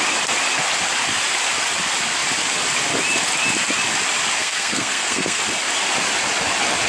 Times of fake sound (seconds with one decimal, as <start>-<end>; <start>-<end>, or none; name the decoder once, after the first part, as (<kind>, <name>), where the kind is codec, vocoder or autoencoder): 4.4-5.4 (codec, SNAC)